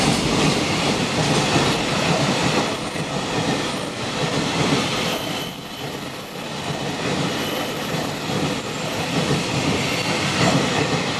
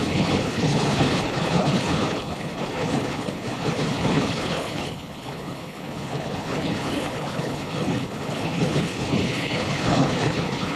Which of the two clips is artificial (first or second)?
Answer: second